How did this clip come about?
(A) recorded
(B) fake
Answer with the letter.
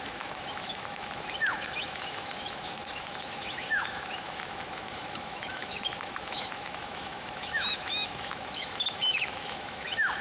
B